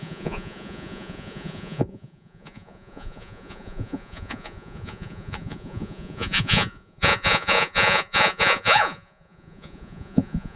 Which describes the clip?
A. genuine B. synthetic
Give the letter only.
B